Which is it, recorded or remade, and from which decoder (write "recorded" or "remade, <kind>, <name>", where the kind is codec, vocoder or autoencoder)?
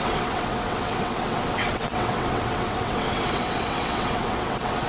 remade, vocoder, WaveNeXt